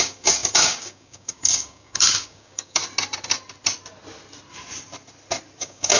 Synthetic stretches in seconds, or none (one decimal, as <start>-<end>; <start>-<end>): 0.0-2.8; 5.6-6.0